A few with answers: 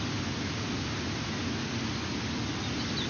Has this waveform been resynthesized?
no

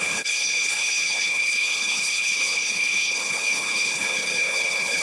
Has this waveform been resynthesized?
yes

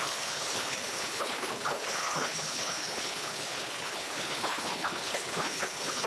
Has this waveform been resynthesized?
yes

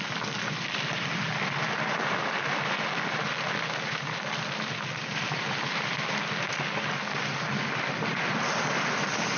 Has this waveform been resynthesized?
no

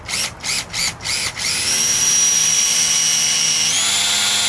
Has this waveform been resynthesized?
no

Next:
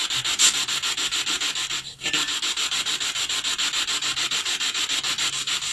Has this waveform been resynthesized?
no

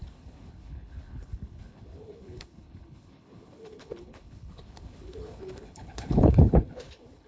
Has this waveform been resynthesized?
yes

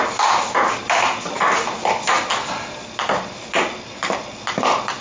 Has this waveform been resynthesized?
no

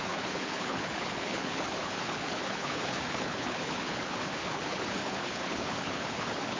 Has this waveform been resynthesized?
yes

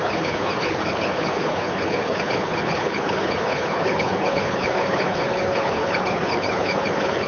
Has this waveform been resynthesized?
yes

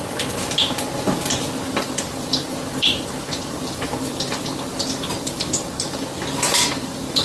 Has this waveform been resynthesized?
no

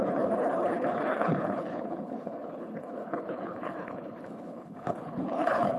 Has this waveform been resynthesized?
yes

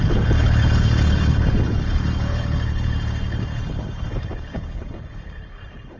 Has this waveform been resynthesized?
yes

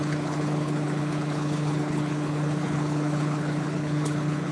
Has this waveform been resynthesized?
yes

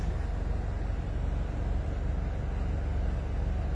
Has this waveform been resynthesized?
no